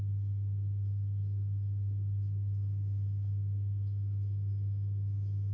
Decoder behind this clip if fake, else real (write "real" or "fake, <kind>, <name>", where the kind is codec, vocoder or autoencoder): fake, autoencoder, DAC-VAE